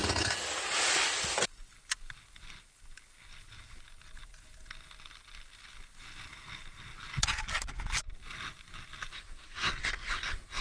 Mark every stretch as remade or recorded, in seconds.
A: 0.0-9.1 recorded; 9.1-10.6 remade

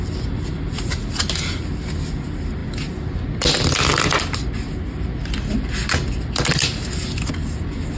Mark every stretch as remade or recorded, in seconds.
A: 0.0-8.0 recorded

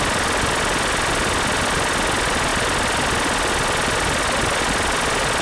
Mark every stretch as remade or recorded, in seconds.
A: 0.0-5.4 recorded